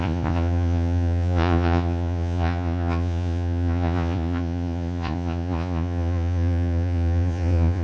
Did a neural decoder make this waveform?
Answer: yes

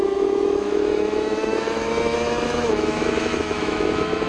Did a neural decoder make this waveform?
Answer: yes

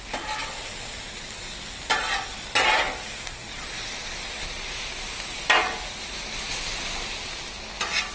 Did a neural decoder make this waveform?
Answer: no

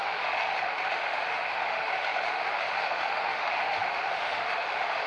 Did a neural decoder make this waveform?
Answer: yes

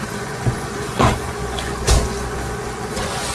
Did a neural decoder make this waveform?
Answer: yes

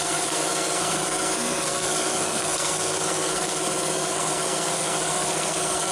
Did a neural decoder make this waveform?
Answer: yes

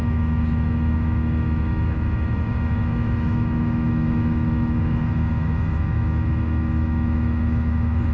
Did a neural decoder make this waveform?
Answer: yes